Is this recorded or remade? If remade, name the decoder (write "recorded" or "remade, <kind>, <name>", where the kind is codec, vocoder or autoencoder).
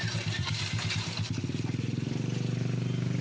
remade, vocoder, BigVGAN v2